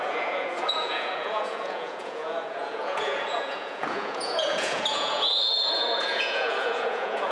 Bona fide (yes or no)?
no